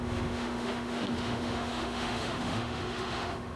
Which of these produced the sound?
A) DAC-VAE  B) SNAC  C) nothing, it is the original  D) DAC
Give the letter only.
A